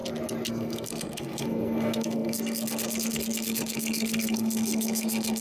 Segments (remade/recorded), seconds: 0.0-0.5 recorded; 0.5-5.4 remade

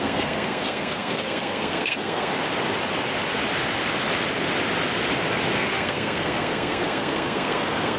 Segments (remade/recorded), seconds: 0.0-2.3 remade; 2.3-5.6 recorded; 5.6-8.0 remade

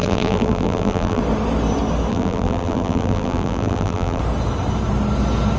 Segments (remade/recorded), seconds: 0.0-1.2 remade; 1.2-2.1 recorded; 2.1-4.2 remade; 4.2-5.6 recorded